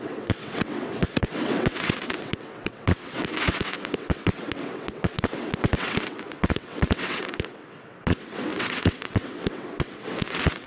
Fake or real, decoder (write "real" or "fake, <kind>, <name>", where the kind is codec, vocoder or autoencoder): fake, vocoder, WaveNeXt